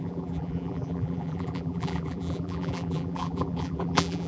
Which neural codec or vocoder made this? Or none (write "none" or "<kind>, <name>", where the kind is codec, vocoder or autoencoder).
vocoder, BigVGAN v2